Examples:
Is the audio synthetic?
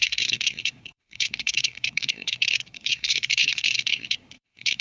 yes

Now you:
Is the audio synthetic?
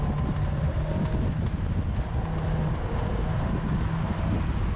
no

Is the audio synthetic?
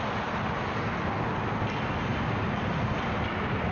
no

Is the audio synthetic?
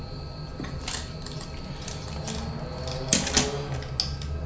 no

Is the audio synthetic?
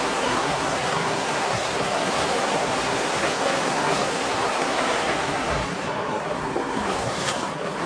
yes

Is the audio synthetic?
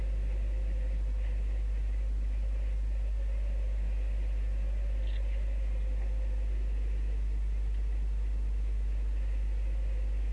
no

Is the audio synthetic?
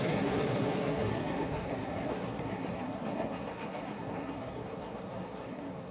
yes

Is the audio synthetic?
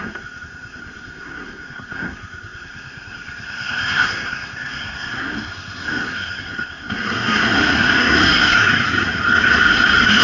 yes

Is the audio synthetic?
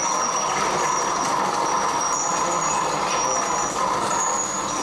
no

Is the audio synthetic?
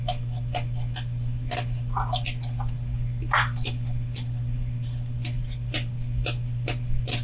no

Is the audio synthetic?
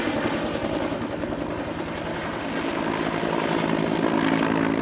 no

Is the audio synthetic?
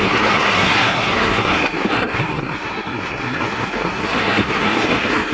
yes